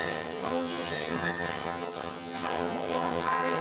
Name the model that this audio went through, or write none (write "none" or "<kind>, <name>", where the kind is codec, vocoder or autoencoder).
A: vocoder, HiFi-GAN